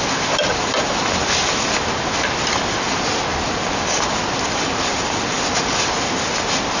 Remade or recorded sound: recorded